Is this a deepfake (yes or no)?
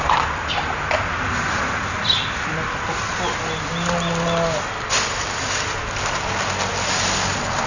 no